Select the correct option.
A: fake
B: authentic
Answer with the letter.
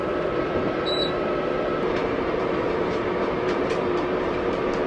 A